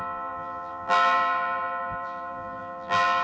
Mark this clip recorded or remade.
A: remade